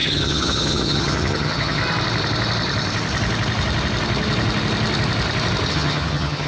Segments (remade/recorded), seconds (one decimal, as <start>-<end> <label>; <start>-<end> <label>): 0.0-1.8 remade; 1.8-5.7 recorded; 5.7-6.5 remade